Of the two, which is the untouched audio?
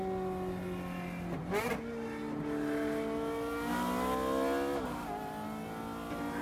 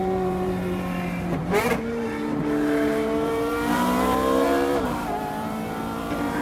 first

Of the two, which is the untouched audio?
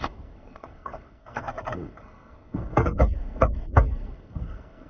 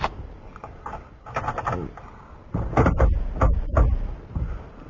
second